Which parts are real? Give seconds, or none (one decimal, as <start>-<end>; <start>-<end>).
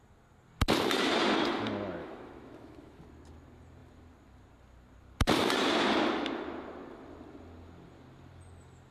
0.0-2.0; 3.0-8.9